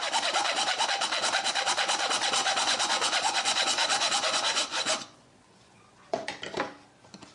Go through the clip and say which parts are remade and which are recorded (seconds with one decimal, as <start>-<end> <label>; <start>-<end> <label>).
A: 0.0-2.4 recorded; 2.4-6.3 remade; 6.3-7.3 recorded